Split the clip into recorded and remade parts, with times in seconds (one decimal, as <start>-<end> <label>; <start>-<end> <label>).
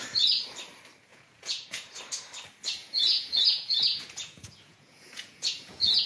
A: 0.0-1.1 recorded; 1.1-2.0 remade; 2.0-2.8 recorded; 2.8-6.1 remade